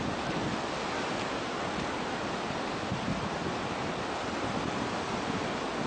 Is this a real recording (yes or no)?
yes